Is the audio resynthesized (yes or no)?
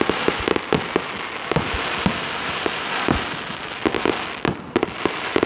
no